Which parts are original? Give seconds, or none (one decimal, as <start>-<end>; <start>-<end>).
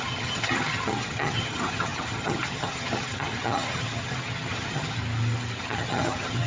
5.0-5.6